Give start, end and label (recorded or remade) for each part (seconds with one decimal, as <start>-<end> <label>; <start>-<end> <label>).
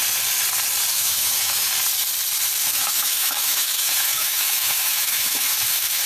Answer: 0.0-0.9 recorded; 0.9-1.7 remade; 1.7-2.6 recorded; 2.6-6.1 remade